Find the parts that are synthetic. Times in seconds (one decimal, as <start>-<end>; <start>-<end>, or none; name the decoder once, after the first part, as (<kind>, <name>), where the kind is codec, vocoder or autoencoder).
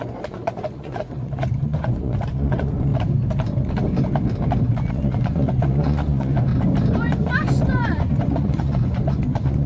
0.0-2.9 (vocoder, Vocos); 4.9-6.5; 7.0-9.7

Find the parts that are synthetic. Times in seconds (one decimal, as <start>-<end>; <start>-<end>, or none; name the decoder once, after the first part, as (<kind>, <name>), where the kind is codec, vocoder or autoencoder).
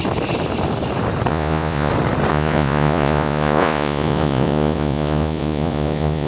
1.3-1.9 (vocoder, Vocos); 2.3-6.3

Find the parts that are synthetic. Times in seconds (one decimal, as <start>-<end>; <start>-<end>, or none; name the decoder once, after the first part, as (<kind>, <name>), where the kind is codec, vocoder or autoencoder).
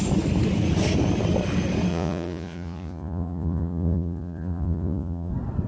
1.9-5.3 (vocoder, Vocos)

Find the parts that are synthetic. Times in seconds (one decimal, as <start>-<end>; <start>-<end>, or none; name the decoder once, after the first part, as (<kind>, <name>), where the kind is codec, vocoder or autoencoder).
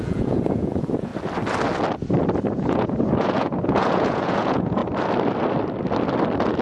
0.0-1.1 (vocoder, Vocos); 2.5-4.8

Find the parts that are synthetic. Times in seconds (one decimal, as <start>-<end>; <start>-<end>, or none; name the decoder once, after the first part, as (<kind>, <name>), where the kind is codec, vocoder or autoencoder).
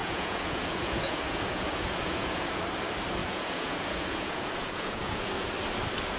0.0-2.6 (vocoder, Vocos); 3.2-5.3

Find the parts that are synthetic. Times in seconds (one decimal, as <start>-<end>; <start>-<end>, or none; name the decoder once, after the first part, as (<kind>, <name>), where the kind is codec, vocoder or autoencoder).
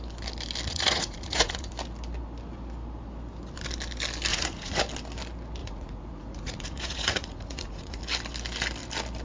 0.7-1.7 (vocoder, Vocos); 4.3-4.8; 5.6-8.0